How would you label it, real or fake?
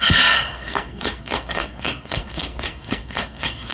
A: fake